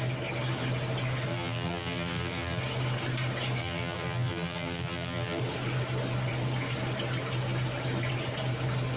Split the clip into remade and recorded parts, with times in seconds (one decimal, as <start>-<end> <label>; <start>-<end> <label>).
0.0-1.3 recorded; 1.3-2.6 remade; 2.6-3.6 recorded; 3.6-5.4 remade; 5.4-9.0 recorded